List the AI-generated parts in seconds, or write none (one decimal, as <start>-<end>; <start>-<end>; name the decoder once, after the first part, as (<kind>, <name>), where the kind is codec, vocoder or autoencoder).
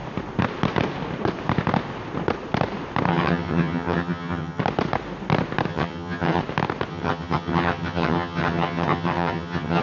3.1-4.6 (vocoder, HiFi-GAN); 5.7-6.4; 6.9-9.8